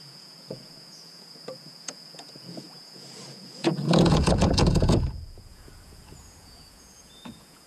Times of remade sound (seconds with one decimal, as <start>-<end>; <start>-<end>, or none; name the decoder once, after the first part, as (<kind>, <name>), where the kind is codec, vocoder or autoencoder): 0.0-7.7 (vocoder, Vocos)